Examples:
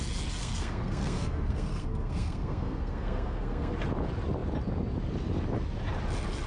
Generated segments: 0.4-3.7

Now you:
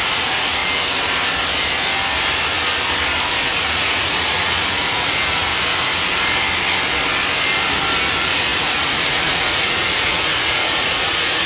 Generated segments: 0.0-0.6; 3.5-5.5; 8.0-11.5

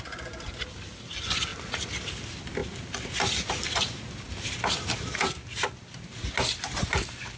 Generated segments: 0.0-1.5; 2.1-2.6; 6.9-7.4